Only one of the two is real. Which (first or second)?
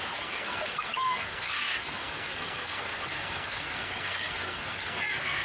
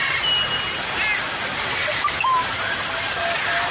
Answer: second